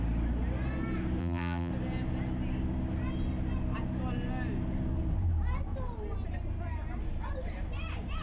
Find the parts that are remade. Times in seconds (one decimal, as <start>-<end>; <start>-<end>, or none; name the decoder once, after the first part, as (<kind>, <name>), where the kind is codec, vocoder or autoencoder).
1.2-1.7 (vocoder, BigVGAN v2)